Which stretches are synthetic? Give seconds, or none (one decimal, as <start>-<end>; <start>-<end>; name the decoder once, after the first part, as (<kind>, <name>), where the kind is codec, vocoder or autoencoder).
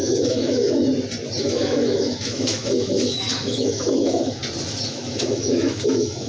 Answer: 0.0-0.9 (autoencoder, DAC-VAE); 1.4-4.4; 4.9-6.3